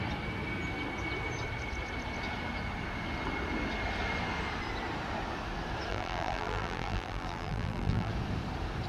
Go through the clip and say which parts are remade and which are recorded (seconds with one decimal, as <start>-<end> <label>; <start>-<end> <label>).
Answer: 0.0-5.9 recorded; 5.9-8.1 remade; 8.1-8.9 recorded